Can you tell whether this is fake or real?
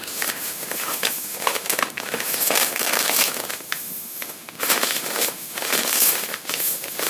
fake